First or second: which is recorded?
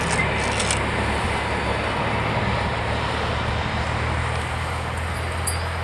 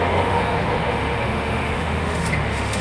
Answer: first